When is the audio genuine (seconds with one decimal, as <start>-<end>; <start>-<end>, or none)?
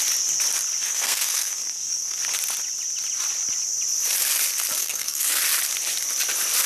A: 0.0-0.8; 2.2-4.8; 5.4-6.7